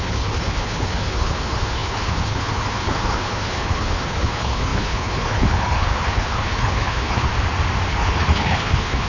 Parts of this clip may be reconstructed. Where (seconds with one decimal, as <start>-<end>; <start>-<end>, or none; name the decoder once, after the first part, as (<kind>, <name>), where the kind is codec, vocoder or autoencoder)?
0.0-7.3 (codec, HILCodec); 7.9-9.1